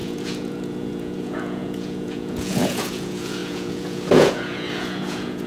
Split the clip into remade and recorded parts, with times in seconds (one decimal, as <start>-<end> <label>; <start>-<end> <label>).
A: 0.0-5.5 remade